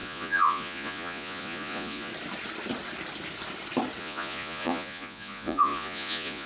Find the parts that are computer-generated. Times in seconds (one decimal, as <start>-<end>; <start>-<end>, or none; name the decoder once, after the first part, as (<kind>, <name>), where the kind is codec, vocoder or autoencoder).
0.0-2.1 (vocoder, Vocos); 4.0-6.5

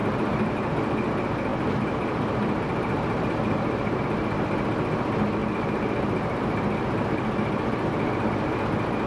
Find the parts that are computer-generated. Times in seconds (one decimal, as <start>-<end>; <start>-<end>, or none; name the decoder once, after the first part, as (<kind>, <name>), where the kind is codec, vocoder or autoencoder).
0.0-0.5 (vocoder, BigVGAN v2); 1.5-4.0; 5.4-8.3

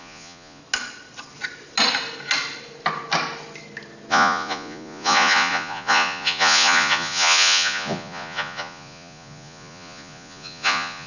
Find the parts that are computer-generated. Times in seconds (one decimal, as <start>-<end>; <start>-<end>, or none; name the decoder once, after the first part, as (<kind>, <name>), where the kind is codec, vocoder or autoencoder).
0.0-0.6 (vocoder, Vocos); 4.1-11.1

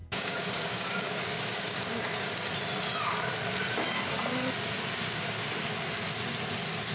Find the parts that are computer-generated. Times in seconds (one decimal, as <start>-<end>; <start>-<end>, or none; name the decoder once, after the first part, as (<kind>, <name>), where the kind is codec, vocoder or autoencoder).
0.0-2.5 (codec, DAC)

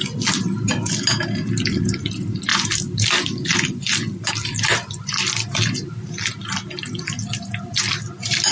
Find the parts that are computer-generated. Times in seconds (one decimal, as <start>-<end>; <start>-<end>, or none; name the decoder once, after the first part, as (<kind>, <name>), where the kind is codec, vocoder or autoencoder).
none